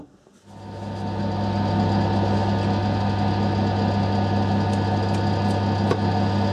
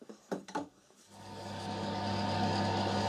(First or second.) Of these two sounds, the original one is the first